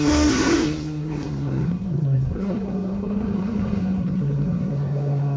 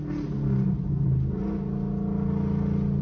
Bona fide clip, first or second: second